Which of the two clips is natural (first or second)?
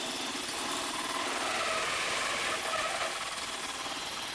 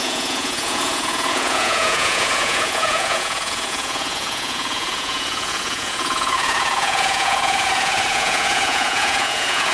first